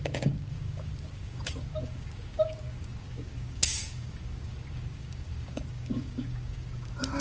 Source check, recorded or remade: remade